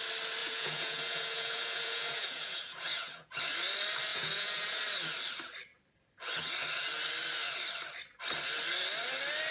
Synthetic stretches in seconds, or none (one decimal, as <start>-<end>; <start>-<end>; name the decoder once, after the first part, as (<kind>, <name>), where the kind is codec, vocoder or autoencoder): 0.4-3.4 (vocoder, Vocos); 4.1-4.8

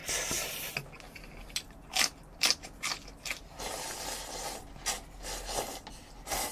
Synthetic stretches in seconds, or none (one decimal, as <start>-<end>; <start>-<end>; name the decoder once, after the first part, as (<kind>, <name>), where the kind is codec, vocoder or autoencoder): none

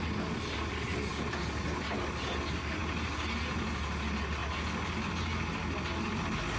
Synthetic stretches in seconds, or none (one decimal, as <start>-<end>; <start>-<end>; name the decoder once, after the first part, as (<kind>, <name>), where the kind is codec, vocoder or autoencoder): none